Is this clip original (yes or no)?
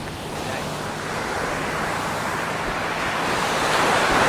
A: yes